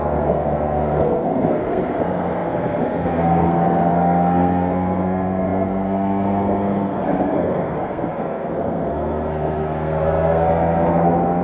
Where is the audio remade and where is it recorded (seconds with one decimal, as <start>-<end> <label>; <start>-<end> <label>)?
0.0-11.4 remade